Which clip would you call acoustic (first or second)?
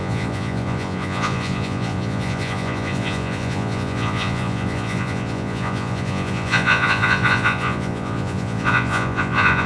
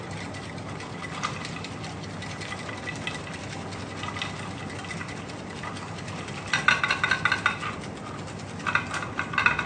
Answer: second